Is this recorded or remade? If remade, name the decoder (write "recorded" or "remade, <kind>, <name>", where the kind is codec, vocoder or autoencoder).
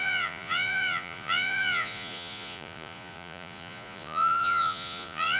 remade, vocoder, Vocos